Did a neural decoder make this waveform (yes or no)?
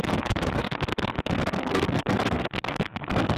yes